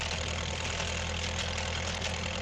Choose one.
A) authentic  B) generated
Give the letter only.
A